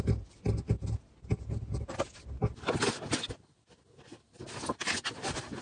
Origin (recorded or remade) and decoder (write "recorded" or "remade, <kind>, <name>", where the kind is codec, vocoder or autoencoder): recorded